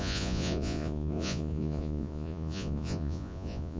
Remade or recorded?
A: remade